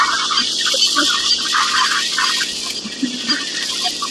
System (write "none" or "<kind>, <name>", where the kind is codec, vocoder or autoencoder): none